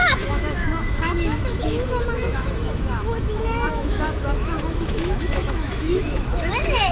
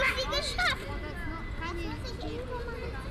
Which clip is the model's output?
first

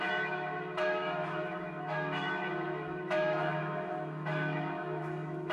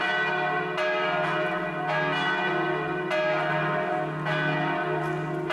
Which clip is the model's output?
first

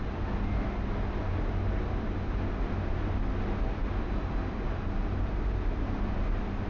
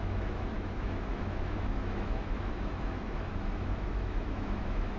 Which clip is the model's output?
second